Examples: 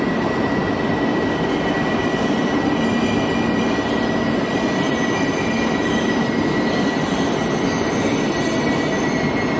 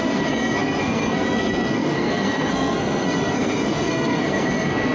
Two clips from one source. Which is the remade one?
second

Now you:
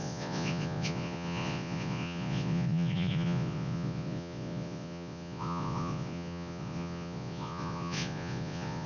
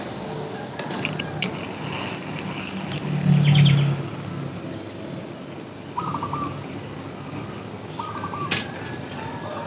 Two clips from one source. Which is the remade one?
first